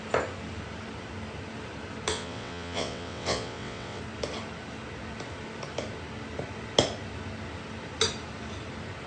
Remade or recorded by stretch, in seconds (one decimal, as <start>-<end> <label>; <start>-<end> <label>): 0.0-2.1 recorded; 2.1-4.0 remade; 4.0-9.1 recorded